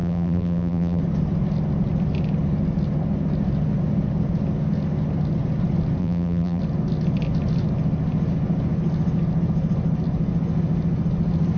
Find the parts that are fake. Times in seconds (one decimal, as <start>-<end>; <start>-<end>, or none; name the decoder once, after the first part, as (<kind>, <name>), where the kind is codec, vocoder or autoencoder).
0.0-1.0 (vocoder, BigVGAN v2); 6.0-6.6